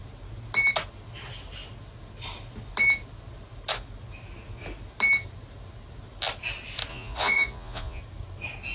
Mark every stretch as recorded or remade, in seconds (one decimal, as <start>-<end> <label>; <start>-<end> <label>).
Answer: 0.0-6.9 recorded; 6.9-8.0 remade; 8.0-8.7 recorded